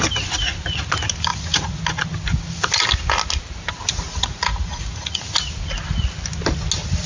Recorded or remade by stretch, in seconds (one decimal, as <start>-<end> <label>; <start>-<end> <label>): 0.0-1.3 recorded; 1.3-1.8 remade; 1.8-4.1 recorded; 4.1-5.2 remade; 5.2-7.1 recorded